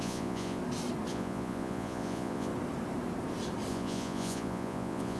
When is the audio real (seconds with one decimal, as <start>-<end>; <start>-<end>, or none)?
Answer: 0.6-1.1; 2.5-3.7